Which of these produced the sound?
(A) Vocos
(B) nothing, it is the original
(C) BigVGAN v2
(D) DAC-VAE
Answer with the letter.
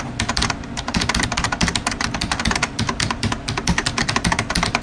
C